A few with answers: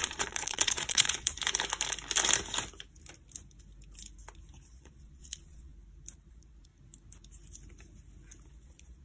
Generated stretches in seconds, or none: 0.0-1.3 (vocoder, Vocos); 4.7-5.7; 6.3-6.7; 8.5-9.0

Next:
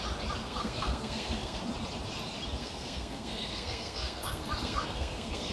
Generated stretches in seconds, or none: 0.4-1.6 (codec, SNAC); 2.6-5.5

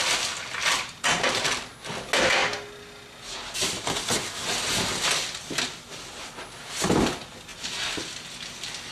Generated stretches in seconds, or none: none

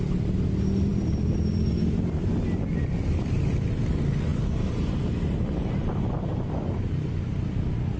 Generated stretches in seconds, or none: none

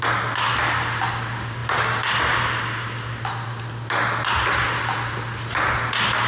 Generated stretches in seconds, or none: none

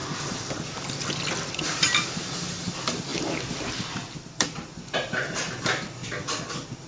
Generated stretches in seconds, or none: 1.6-3.1 (vocoder, BigVGAN v2); 3.7-6.9

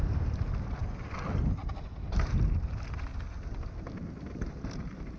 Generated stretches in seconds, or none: 0.0-0.8 (vocoder, BigVGAN v2); 1.7-5.2

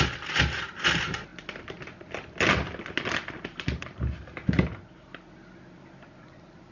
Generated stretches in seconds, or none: none